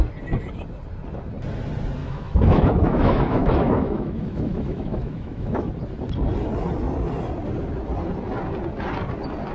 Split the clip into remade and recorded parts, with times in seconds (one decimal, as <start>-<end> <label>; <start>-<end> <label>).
0.0-2.0 recorded; 2.0-5.7 remade; 5.7-9.5 recorded